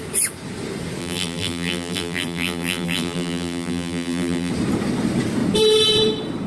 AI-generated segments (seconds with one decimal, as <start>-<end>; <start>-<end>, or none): 1.0-4.5